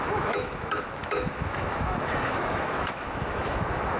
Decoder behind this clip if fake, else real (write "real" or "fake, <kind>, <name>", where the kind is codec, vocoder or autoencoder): fake, autoencoder, DAC-VAE